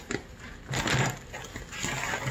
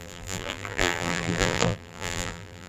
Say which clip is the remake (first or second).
second